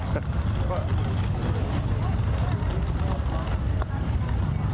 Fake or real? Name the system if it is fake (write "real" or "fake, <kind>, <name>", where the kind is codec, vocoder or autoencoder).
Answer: real